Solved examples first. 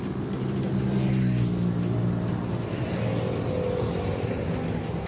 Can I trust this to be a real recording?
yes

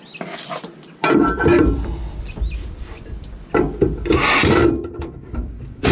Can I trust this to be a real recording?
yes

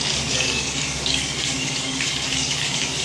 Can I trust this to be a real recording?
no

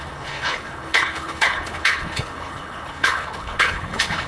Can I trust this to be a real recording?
no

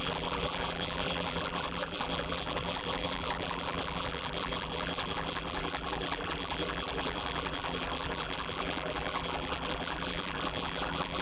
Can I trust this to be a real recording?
no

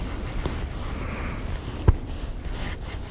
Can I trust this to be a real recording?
yes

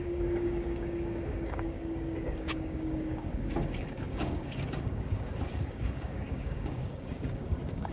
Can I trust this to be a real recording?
no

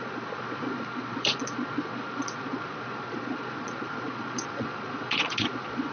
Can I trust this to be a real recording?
no